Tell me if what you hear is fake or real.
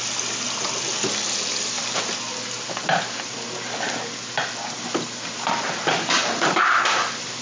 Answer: real